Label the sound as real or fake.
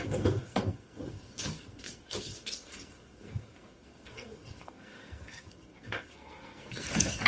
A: fake